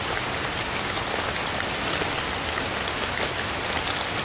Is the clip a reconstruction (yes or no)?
no